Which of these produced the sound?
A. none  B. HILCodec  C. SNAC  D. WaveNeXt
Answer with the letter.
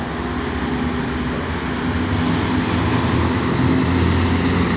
A